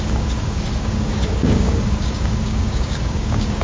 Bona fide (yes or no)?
no